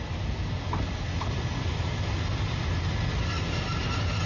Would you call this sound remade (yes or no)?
no